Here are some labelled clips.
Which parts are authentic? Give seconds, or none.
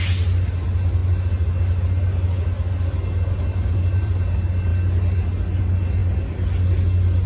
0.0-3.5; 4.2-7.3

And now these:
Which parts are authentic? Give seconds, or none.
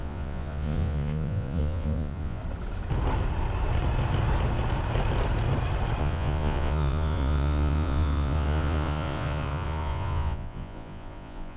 2.4-6.0